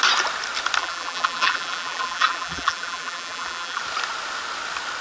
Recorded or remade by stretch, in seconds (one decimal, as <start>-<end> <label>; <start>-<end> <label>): 0.0-0.8 recorded; 0.8-3.8 remade; 3.8-5.0 recorded